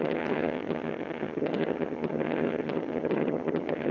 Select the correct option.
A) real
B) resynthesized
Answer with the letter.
B